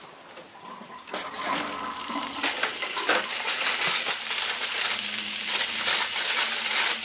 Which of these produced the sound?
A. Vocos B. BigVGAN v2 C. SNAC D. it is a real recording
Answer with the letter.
B